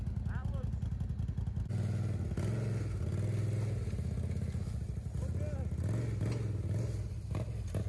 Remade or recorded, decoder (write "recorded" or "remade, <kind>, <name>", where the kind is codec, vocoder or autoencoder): recorded